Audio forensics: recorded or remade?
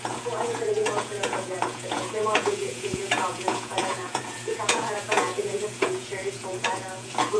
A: remade